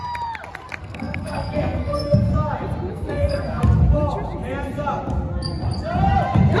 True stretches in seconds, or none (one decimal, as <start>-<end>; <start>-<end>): 0.0-0.8; 2.3-2.9; 3.6-6.6